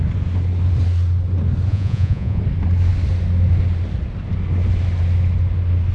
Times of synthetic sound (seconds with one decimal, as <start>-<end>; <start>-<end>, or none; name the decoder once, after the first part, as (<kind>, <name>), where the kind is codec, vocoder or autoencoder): 1.7-2.4 (vocoder, Vocos)